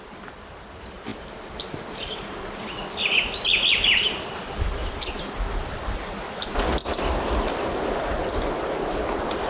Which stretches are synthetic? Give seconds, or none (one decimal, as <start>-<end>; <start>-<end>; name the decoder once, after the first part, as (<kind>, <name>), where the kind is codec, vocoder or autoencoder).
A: none